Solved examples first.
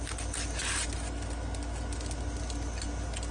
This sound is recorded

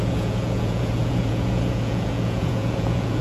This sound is remade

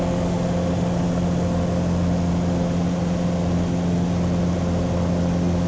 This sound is recorded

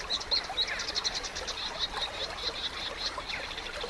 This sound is recorded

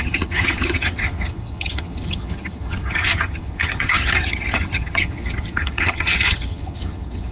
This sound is remade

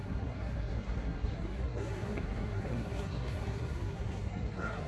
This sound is remade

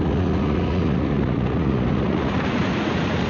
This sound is remade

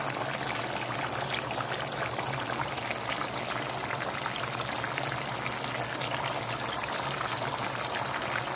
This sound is recorded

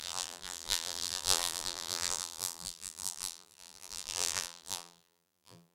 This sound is remade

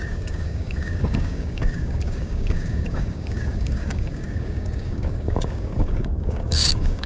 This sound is remade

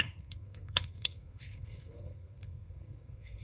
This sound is remade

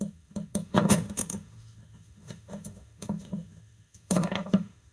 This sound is remade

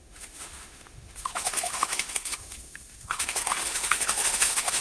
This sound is remade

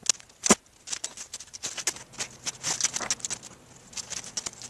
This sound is recorded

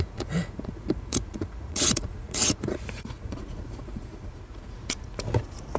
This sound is remade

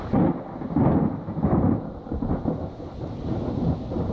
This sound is recorded